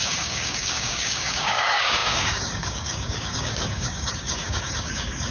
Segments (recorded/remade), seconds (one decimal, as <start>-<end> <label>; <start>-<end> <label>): 0.0-5.3 remade